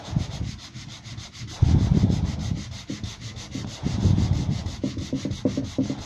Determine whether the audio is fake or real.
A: real